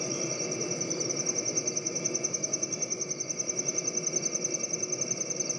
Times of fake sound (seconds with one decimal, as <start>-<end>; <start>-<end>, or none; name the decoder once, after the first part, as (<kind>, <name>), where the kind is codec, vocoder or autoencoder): none